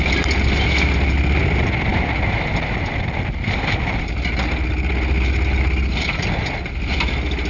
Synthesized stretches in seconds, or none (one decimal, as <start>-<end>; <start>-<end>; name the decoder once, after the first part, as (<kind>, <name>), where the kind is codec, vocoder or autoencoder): none